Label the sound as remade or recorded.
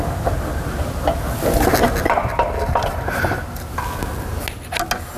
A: recorded